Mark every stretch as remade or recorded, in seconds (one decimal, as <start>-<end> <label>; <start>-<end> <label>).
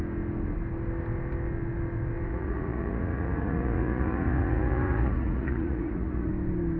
0.0-2.3 recorded; 2.3-6.3 remade; 6.3-6.8 recorded